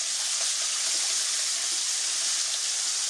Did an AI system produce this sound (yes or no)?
no